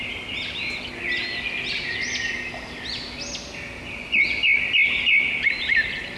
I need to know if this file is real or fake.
real